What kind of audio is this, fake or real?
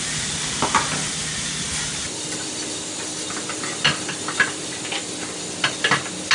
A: real